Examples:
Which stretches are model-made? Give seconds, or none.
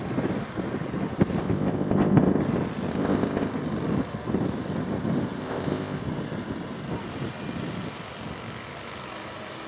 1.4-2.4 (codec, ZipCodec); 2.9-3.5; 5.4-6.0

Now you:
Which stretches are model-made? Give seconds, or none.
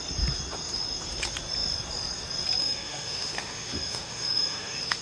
2.6-5.0 (autoencoder, DAC-VAE)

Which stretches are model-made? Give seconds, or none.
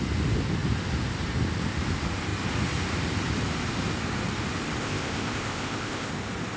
4.8-6.1 (codec, ZipCodec)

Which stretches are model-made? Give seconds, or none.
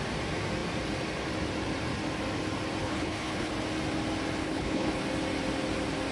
2.8-3.5 (codec, HILCodec); 4.4-5.0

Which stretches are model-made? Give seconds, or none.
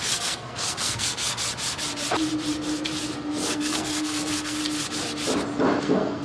0.0-1.5 (codec, SNAC); 3.3-4.6; 5.8-6.2